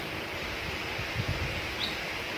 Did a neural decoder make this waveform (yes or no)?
no